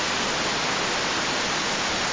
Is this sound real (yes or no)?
yes